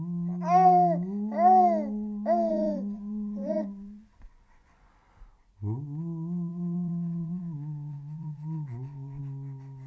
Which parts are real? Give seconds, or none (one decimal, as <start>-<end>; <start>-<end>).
0.0-2.5; 4.9-6.5; 9.2-9.9